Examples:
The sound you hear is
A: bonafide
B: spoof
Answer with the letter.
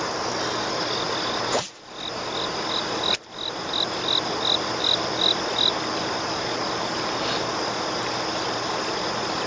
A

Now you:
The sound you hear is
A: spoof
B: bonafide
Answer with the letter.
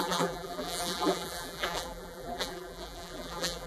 A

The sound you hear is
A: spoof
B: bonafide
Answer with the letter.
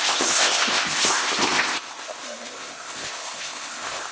A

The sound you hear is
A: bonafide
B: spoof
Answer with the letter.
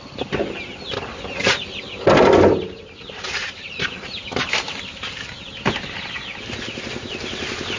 A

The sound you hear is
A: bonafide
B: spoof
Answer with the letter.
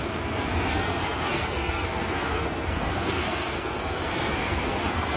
B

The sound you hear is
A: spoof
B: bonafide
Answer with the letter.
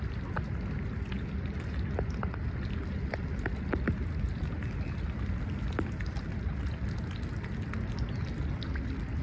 B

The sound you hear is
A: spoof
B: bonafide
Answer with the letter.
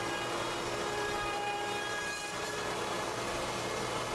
B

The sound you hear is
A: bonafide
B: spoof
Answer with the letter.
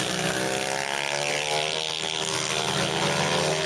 A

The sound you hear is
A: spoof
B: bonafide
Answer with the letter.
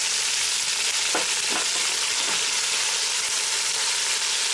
B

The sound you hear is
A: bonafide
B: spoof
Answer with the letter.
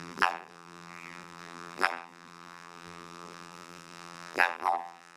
B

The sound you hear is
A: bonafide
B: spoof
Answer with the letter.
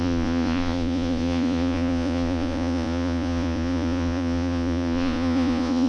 B